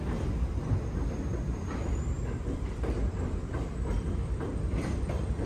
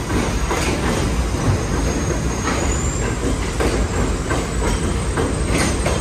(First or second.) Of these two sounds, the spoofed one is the first